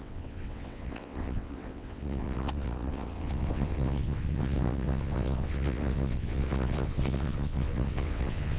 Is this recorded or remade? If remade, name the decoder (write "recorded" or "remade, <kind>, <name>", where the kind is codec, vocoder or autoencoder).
remade, vocoder, WaveNeXt